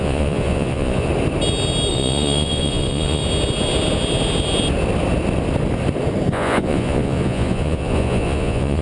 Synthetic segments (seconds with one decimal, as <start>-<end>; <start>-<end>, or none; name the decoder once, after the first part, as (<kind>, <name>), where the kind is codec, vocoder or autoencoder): 0.0-1.1 (vocoder, Vocos); 1.9-3.2; 6.3-8.8